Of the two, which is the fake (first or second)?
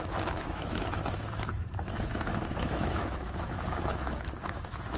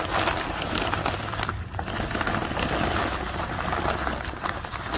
first